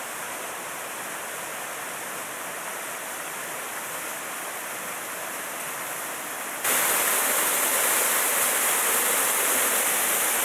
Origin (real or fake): real